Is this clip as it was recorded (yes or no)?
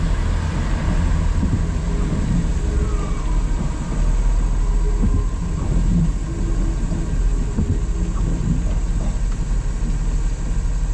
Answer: yes